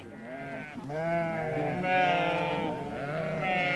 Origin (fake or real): real